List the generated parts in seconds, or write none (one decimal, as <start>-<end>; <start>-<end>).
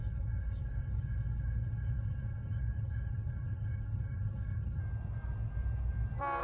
0.0-4.8